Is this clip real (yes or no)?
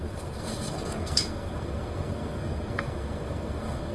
no